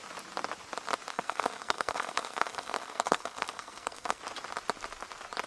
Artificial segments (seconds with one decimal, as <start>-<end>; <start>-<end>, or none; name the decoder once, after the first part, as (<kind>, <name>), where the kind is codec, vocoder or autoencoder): 1.1-4.2 (codec, SNAC)